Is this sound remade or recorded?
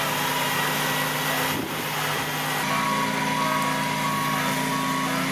recorded